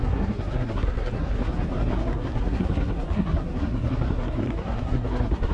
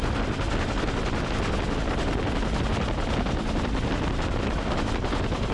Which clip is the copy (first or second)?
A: first